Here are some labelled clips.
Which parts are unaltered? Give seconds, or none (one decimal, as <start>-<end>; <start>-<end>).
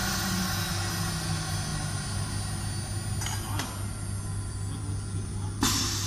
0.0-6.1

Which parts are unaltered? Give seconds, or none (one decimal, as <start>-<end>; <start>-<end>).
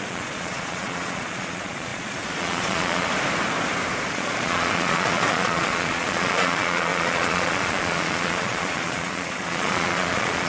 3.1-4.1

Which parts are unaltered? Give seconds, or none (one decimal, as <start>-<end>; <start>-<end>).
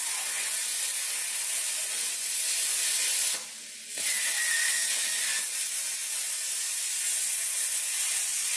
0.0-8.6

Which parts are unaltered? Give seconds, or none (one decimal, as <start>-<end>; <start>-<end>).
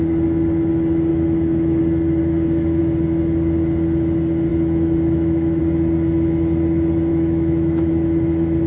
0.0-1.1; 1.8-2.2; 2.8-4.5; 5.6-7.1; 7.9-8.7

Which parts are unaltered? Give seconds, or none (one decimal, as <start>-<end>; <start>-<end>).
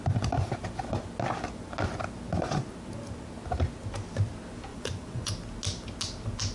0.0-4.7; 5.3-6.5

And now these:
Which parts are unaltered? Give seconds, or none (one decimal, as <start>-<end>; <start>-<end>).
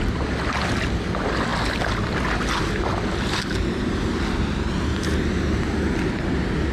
0.0-6.7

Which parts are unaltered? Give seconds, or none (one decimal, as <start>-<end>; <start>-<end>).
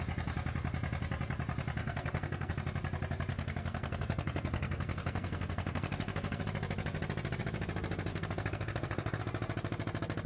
0.0-1.8; 2.5-3.3; 6.4-8.1; 9.2-10.3